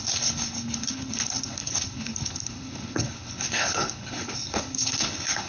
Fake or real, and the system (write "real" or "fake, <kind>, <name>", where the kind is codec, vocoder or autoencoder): fake, codec, HILCodec